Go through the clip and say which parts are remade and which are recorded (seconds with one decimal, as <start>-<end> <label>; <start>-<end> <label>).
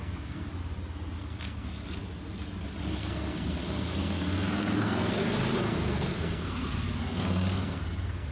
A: 0.0-0.5 remade; 0.5-1.2 recorded; 1.2-2.0 remade; 2.0-2.8 recorded; 2.8-8.3 remade